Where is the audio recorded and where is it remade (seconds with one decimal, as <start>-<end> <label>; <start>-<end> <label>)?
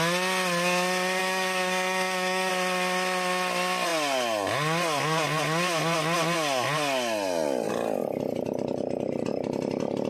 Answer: 0.0-1.2 recorded; 1.2-2.5 remade; 2.5-10.1 recorded